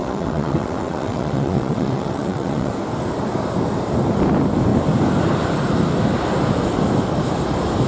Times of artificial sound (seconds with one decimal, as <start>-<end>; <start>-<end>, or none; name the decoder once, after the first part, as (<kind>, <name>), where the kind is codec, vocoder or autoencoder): 0.0-2.7 (vocoder, WaveNeXt)